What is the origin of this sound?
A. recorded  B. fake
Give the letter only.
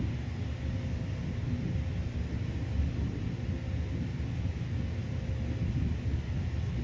A